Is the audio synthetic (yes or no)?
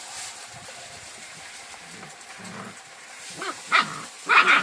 yes